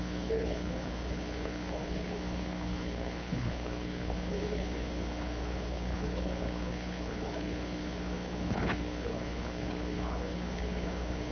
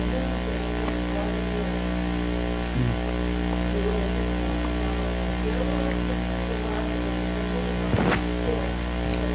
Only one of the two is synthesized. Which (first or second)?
first